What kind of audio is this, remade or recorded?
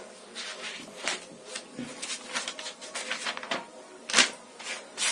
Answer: recorded